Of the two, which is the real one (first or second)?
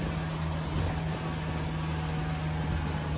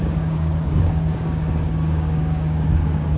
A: first